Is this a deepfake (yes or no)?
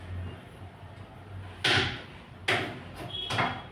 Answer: no